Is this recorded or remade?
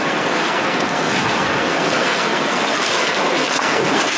remade